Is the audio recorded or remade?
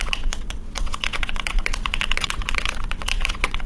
remade